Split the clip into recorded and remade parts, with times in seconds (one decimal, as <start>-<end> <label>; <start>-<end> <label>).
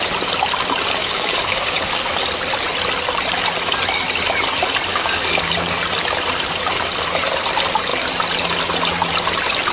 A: 0.0-1.0 recorded; 1.0-2.1 remade; 2.1-4.9 recorded; 4.9-5.5 remade; 5.5-9.7 recorded